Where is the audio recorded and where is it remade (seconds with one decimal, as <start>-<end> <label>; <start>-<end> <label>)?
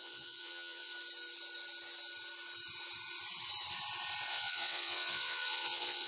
0.0-0.9 remade; 0.9-4.3 recorded; 4.3-6.1 remade